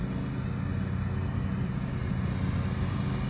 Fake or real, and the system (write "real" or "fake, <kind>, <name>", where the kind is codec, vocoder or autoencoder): real